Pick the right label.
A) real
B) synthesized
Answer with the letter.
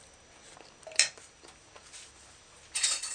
A